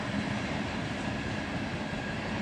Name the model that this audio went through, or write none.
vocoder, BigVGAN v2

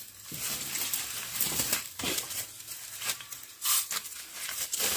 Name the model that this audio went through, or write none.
none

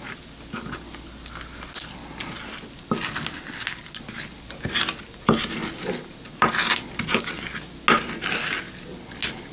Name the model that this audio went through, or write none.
none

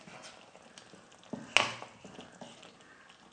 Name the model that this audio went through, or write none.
none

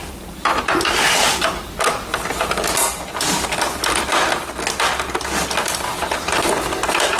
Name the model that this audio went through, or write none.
none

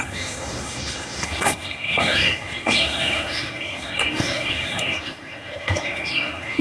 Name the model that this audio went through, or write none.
codec, SNAC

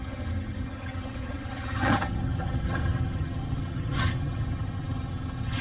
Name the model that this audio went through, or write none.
vocoder, HiFi-GAN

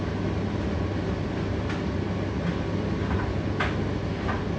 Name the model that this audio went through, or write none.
none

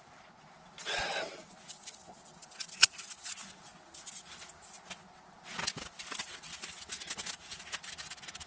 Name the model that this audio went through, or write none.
none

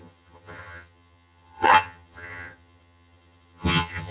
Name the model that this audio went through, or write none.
vocoder, HiFi-GAN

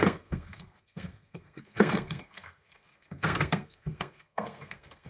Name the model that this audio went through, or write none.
codec, SNAC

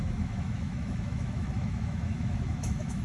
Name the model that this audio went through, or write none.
autoencoder, DAC-VAE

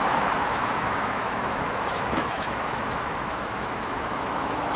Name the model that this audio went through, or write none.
autoencoder, DAC-VAE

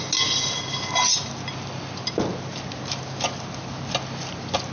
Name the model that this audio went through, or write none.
none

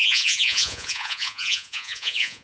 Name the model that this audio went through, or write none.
vocoder, Vocos